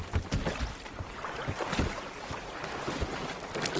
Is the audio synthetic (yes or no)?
no